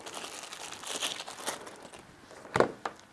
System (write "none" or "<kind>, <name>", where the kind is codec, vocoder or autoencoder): none